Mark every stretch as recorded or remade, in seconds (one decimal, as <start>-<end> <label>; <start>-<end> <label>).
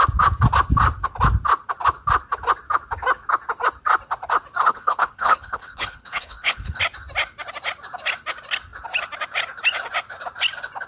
0.0-4.7 recorded; 4.7-6.8 remade; 6.8-10.9 recorded